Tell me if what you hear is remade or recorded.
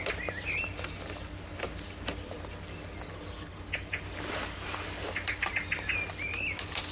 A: recorded